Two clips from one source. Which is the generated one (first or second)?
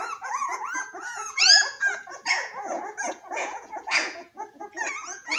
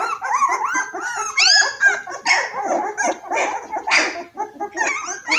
first